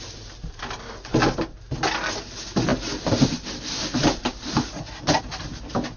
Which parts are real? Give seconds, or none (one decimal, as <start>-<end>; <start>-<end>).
0.0-6.0